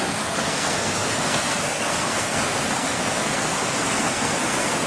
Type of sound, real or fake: fake